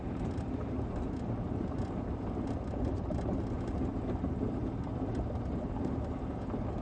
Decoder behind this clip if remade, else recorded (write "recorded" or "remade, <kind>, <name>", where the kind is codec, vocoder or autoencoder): remade, vocoder, BigVGAN v2